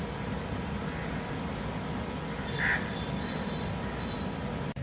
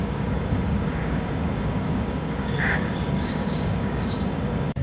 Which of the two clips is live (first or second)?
first